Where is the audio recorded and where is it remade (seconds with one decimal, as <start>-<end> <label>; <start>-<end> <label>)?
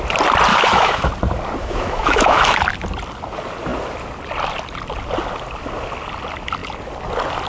0.0-0.5 recorded; 0.5-1.1 remade; 1.1-1.6 recorded; 1.6-2.6 remade; 2.6-7.5 recorded